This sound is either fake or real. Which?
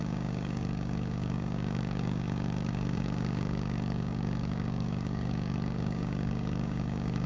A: fake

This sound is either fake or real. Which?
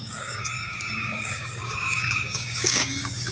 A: fake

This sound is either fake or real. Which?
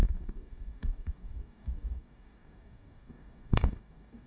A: fake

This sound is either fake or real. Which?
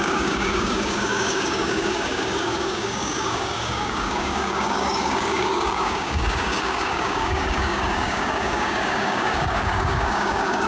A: fake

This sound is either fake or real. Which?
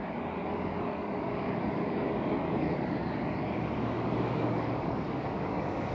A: fake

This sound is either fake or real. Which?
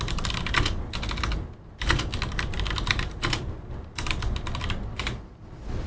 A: real